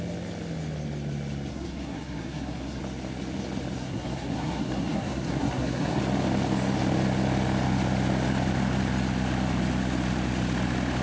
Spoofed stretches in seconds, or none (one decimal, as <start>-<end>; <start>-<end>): 1.5-2.8; 3.8-6.0